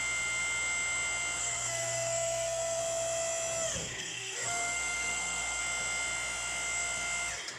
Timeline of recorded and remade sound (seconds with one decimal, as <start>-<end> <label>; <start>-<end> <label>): 0.0-1.4 recorded; 1.4-2.8 remade; 2.8-3.8 recorded; 3.8-5.6 remade; 5.6-7.6 recorded